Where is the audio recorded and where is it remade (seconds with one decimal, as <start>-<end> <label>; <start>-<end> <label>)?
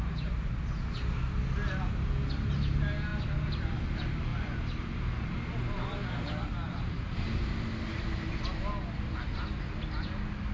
0.0-10.5 recorded